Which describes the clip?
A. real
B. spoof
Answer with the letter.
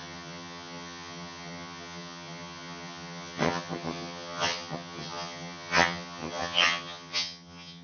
B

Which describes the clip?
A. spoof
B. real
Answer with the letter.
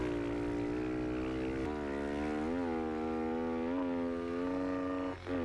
B